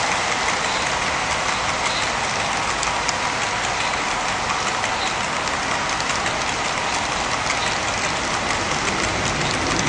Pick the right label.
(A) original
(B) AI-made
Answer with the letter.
A